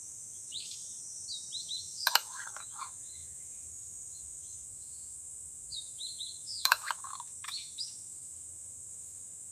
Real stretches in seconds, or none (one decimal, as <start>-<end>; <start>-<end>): 0.8-1.6